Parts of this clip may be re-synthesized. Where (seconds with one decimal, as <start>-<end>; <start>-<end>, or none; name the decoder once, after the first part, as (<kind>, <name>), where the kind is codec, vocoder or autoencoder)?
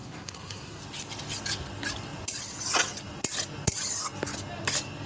0.0-0.8 (codec, SNAC)